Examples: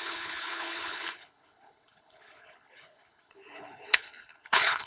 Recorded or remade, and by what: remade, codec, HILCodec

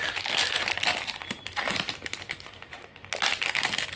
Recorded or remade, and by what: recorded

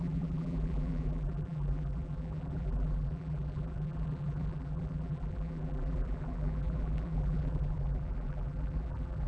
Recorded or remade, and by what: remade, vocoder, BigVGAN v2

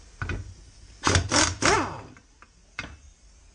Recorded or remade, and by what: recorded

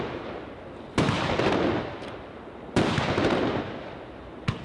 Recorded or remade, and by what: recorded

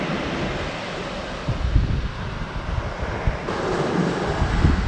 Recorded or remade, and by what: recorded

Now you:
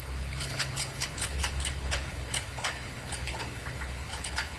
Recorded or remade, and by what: remade, codec, HILCodec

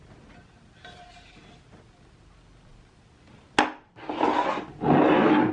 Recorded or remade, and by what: recorded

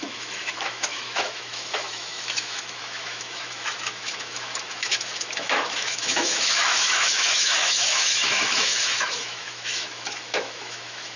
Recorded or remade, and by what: remade, autoencoder, DAC-VAE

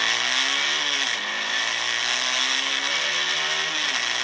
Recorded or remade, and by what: recorded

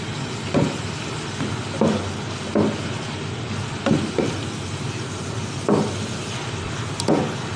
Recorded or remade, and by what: recorded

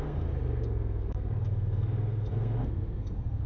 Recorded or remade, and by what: remade, codec, SNAC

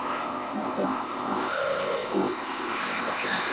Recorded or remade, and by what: remade, codec, ZipCodec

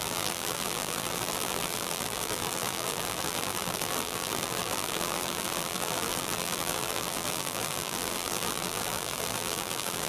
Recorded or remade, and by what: remade, vocoder, BigVGAN v2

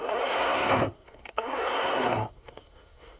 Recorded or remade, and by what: remade, codec, SNAC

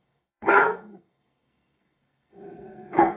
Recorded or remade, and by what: remade, codec, SNAC